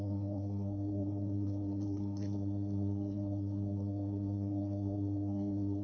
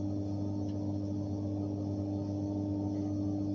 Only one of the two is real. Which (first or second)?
second